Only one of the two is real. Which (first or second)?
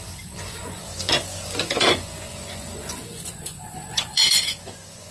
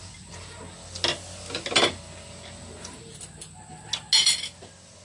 second